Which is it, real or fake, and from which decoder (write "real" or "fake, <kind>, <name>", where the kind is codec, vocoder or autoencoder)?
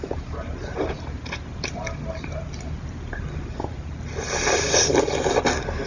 real